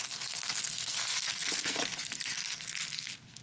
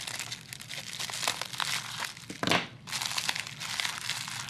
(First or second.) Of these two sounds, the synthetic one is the first